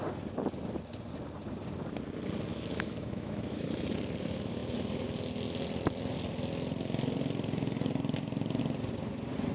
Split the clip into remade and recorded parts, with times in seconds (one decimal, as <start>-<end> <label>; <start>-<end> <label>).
0.0-2.5 recorded; 2.5-3.9 remade; 3.9-9.5 recorded